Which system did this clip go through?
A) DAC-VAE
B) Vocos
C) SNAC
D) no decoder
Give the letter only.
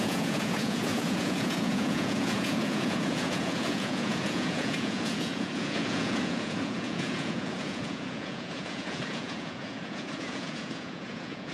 B